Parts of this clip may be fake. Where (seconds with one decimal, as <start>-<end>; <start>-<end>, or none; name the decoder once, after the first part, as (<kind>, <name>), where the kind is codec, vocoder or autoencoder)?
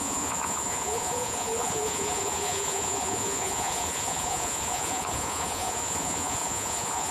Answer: 0.0-7.1 (vocoder, Vocos)